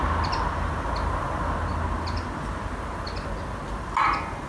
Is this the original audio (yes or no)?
yes